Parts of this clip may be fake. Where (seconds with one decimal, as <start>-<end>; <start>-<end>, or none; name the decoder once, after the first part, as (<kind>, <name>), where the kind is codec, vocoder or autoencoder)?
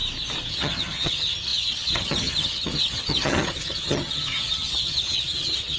0.5-5.8 (vocoder, HiFi-GAN)